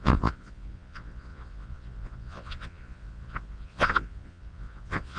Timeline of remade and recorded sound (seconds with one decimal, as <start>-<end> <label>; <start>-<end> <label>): 0.0-5.2 remade